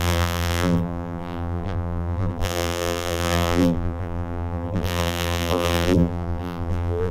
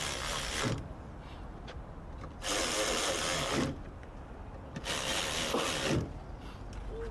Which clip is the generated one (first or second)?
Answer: first